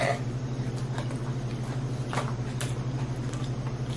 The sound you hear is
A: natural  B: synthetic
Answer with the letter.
A